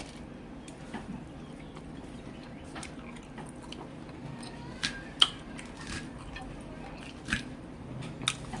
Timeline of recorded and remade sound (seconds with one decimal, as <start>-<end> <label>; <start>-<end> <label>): 0.0-8.6 recorded